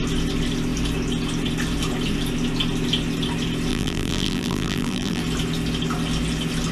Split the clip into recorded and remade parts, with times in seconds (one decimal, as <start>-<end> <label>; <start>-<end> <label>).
0.0-3.7 recorded; 3.7-5.2 remade; 5.2-6.7 recorded